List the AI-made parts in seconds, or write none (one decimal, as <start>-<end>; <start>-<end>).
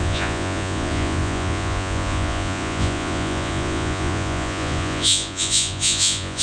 0.0-6.4